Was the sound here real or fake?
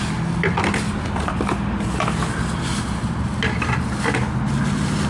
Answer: real